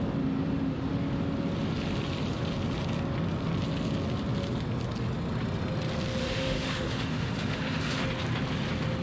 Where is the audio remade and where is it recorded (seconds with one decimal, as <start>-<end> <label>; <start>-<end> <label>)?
0.0-6.2 recorded; 6.2-8.0 remade; 8.0-9.0 recorded